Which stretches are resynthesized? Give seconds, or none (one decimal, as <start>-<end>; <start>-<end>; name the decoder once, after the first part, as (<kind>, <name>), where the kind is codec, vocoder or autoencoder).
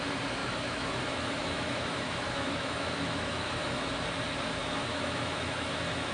0.4-4.1 (autoencoder, DAC-VAE); 4.6-6.1